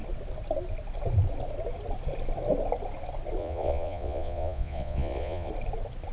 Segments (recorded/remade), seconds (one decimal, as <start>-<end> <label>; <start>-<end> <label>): 0.0-3.4 recorded; 3.4-5.5 remade; 5.5-6.1 recorded